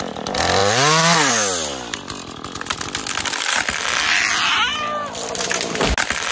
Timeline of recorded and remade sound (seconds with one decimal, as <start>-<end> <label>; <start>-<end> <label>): 0.0-6.3 recorded